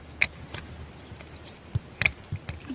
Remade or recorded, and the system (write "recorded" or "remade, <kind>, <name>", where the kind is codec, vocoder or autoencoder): remade, vocoder, BigVGAN v2